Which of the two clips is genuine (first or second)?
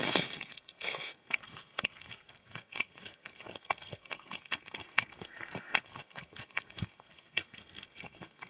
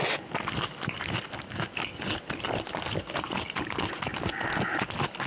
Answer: second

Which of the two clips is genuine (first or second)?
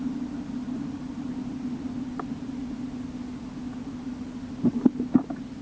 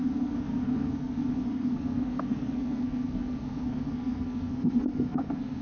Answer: first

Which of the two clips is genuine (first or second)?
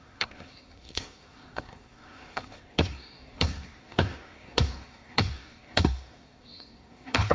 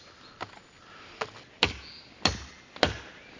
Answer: second